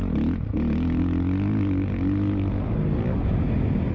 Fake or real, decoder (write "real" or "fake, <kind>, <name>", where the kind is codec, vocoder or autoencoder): real